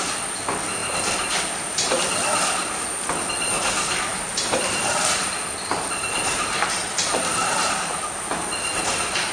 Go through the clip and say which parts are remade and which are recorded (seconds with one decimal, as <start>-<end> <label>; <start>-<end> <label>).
0.0-4.1 recorded; 4.1-8.0 remade; 8.0-8.4 recorded; 8.4-9.3 remade